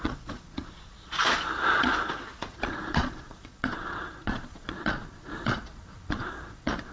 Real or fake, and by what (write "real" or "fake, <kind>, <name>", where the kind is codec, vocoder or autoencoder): fake, vocoder, Vocos